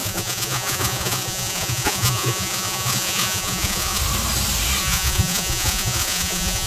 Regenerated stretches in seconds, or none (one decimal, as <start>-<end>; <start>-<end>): 0.0-4.0; 4.8-6.7